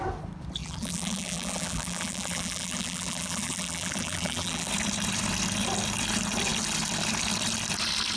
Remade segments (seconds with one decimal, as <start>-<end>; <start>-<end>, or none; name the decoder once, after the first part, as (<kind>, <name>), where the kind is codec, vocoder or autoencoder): 0.6-4.7 (vocoder, BigVGAN v2)